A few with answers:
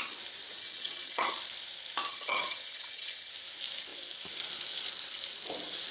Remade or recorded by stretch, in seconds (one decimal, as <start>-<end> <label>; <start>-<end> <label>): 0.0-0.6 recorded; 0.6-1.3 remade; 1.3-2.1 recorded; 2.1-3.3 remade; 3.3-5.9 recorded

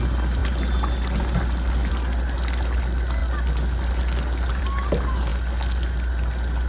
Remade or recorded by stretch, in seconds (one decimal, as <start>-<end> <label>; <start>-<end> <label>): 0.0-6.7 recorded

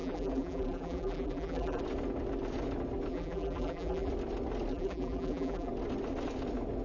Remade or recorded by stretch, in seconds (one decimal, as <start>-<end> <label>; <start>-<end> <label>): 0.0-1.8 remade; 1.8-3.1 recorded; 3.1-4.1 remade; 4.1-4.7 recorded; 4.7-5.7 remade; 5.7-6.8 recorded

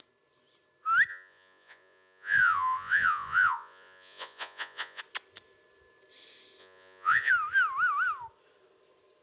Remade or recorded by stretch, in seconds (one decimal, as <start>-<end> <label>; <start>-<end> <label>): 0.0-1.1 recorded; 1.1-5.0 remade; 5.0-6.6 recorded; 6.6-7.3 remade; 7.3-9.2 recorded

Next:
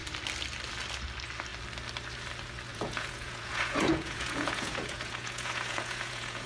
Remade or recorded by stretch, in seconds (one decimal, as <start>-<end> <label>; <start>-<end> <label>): 0.0-2.7 recorded; 2.7-6.5 remade

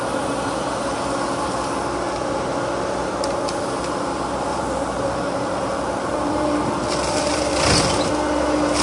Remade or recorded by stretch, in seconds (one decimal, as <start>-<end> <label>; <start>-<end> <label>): 0.0-4.5 recorded; 4.5-7.4 remade; 7.4-8.8 recorded

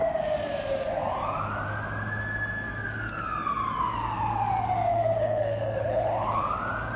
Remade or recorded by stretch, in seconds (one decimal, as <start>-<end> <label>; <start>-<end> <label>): 0.0-4.9 recorded; 4.9-6.4 remade; 6.4-7.0 recorded

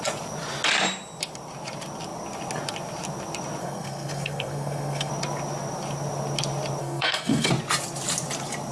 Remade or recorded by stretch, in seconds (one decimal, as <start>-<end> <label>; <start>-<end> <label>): 0.0-3.6 recorded; 3.6-5.1 remade; 5.1-6.8 recorded; 6.8-7.5 remade; 7.5-8.7 recorded